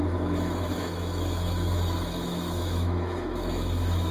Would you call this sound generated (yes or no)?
yes